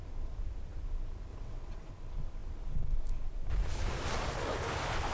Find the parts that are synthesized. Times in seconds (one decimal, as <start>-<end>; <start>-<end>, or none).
1.3-1.9